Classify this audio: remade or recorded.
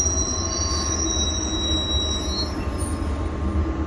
recorded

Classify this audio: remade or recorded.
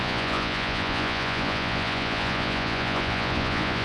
remade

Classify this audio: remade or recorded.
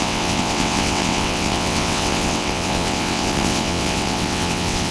remade